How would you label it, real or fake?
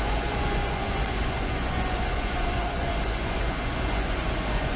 fake